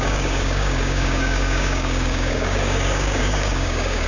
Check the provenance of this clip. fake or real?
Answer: fake